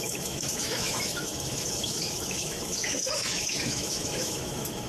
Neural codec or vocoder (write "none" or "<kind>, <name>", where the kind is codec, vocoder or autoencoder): autoencoder, DAC-VAE